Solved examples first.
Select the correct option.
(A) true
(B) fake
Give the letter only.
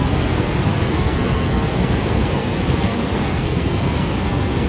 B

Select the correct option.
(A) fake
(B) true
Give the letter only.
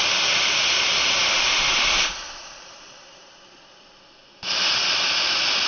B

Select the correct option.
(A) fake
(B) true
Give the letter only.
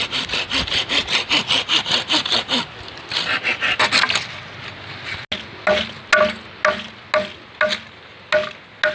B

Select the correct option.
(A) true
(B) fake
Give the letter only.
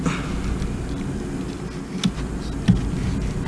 A